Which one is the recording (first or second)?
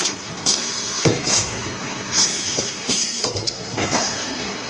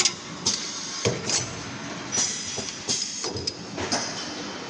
second